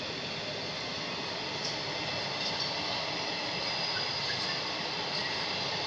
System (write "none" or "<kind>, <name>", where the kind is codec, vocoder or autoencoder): none